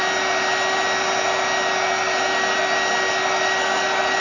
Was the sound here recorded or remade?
recorded